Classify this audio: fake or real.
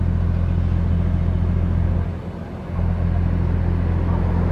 real